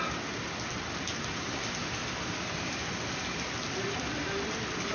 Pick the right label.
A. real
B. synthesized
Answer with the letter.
A